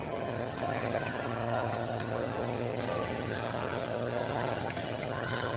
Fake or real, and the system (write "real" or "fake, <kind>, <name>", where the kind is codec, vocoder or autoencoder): fake, vocoder, HiFi-GAN